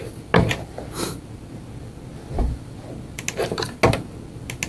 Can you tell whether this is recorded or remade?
recorded